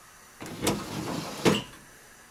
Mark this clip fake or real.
real